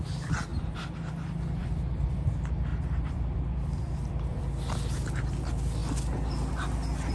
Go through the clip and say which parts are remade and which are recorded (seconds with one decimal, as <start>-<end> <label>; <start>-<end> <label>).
0.0-0.5 recorded; 0.5-1.1 remade; 1.1-1.6 recorded; 1.6-2.3 remade; 2.3-2.7 recorded; 2.7-4.4 remade; 4.4-7.1 recorded